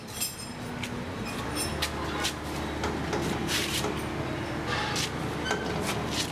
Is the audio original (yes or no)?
yes